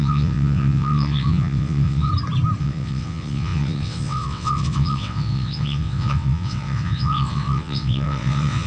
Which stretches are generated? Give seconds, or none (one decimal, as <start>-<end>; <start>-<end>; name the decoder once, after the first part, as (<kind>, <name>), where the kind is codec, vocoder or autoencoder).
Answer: 0.0-2.1 (vocoder, WaveNeXt); 2.6-8.7